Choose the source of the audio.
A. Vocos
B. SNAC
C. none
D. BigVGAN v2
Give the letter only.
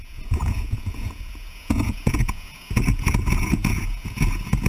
A